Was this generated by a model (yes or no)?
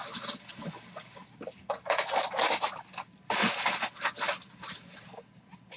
no